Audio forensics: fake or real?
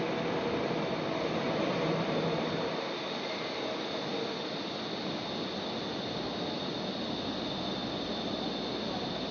real